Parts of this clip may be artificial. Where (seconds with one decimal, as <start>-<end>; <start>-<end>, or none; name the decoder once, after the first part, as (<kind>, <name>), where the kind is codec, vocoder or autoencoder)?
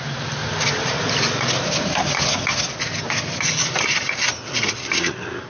none